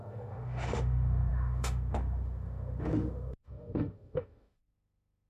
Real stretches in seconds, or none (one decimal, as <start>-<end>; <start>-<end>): none